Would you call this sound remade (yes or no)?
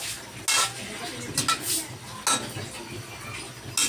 no